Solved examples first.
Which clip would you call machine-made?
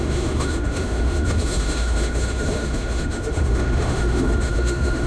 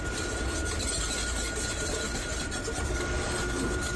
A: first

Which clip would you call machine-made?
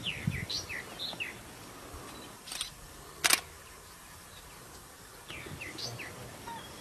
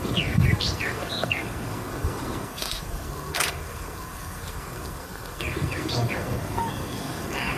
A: second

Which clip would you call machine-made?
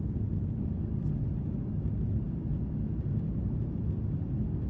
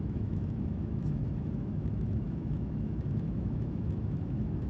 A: second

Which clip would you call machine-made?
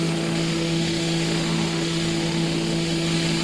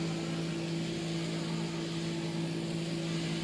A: first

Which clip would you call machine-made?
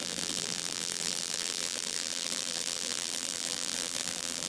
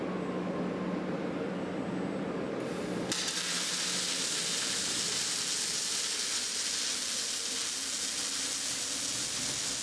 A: first